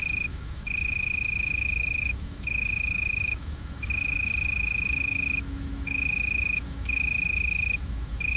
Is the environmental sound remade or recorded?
remade